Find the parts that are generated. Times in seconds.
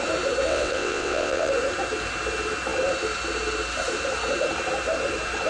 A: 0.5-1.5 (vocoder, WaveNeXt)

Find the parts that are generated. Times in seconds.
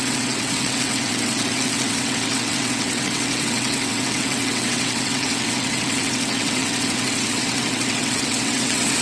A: 0.0-9.0 (vocoder, WaveNeXt)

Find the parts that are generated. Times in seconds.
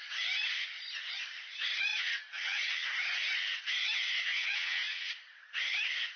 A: 1.9-2.7 (vocoder, WaveNeXt); 4.3-5.1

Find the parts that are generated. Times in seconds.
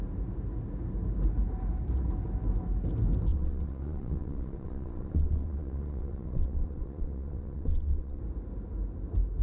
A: 3.3-8.2 (vocoder, WaveNeXt)